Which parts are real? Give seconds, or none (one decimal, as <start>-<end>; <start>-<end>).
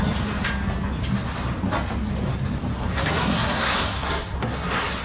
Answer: 0.0-2.7